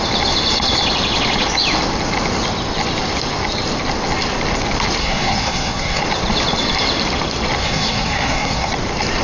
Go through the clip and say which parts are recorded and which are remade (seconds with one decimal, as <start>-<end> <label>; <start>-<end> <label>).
0.0-5.0 recorded; 5.0-6.0 remade; 6.0-7.6 recorded; 7.6-8.7 remade; 8.7-9.2 recorded